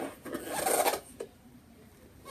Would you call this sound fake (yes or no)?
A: no